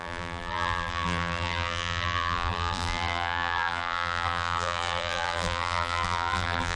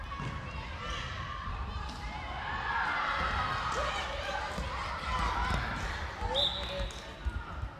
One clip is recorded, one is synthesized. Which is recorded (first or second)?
second